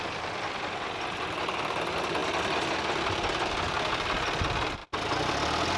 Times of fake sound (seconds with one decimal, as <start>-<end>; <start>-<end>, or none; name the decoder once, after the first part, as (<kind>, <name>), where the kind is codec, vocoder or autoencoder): none